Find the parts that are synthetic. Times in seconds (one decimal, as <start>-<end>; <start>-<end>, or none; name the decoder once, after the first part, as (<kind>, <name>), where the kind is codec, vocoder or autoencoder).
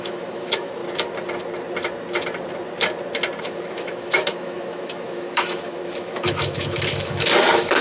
0.0-0.8 (autoencoder, DAC-VAE); 3.4-7.8